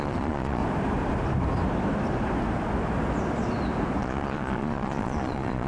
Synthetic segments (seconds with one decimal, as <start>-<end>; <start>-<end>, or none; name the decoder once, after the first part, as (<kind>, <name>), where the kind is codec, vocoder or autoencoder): 0.0-0.6 (vocoder, Vocos); 4.0-5.7